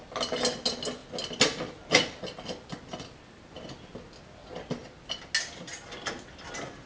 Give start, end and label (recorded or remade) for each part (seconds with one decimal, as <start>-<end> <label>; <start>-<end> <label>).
0.0-6.9 recorded